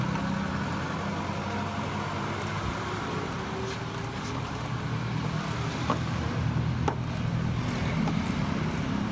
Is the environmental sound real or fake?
real